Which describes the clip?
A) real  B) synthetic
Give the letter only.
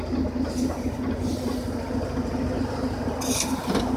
A